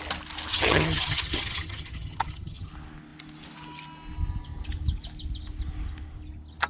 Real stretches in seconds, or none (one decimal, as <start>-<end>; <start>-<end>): 0.0-0.5; 2.7-6.7